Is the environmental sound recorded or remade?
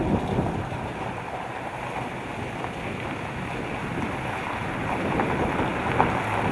recorded